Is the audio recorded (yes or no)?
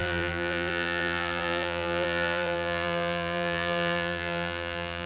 no